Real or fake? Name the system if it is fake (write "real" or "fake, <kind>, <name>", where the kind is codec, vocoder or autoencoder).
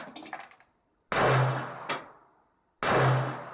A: real